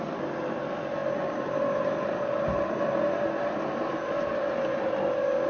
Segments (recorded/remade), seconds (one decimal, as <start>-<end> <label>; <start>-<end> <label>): 0.0-5.5 recorded